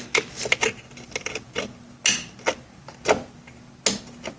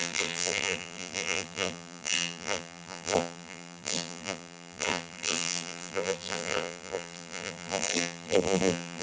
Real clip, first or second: first